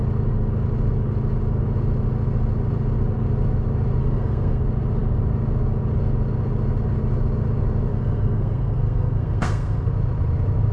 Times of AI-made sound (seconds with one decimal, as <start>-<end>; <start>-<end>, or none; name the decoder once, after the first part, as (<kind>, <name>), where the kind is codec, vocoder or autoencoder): 4.0-4.6 (codec, SNAC); 7.9-9.9